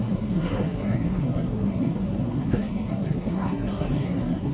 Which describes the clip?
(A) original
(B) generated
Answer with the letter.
B